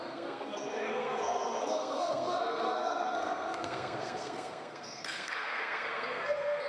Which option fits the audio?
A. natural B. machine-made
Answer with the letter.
B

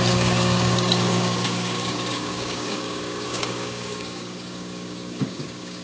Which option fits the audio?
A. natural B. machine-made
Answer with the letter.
B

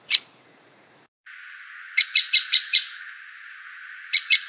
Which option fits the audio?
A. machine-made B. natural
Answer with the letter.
A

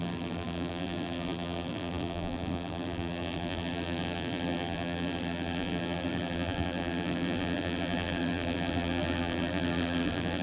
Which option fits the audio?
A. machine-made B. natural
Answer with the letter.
A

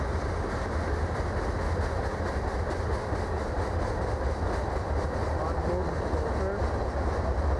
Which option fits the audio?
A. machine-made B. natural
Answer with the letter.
B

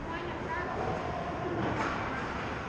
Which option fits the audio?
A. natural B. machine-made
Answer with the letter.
A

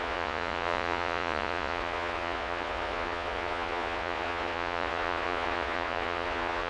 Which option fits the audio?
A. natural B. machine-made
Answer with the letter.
B